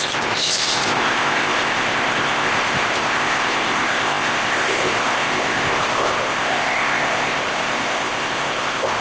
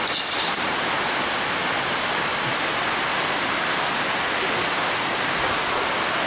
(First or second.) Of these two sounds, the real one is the second